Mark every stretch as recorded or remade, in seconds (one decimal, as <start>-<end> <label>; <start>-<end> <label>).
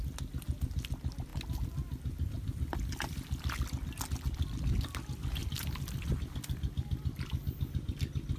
0.0-8.4 recorded